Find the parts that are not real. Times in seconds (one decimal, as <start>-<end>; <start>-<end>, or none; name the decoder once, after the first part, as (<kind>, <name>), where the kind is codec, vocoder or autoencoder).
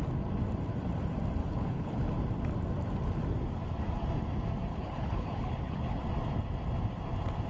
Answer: 1.4-2.1 (codec, HILCodec); 4.7-6.0